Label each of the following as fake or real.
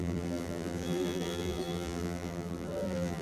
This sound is fake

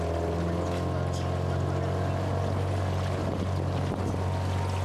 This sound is real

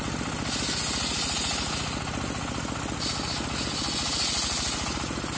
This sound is real